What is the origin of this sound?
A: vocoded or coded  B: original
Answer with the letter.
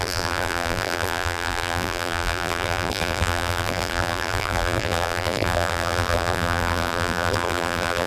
A